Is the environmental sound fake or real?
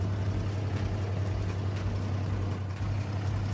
real